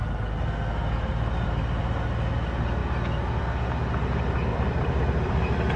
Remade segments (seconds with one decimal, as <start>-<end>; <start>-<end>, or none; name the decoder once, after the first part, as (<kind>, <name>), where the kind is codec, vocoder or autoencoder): 1.1-1.8 (vocoder, BigVGAN v2); 4.5-5.8